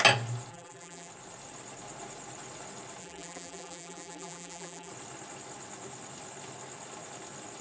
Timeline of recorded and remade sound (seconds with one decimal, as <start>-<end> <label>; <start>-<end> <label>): 0.0-0.5 recorded; 0.5-1.1 remade; 1.1-3.0 recorded; 3.0-4.9 remade; 4.9-7.6 recorded